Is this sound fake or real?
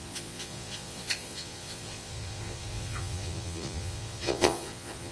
fake